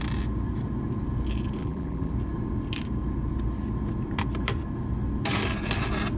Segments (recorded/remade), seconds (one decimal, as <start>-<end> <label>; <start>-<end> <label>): 0.0-1.6 recorded; 1.6-2.1 remade; 2.1-6.2 recorded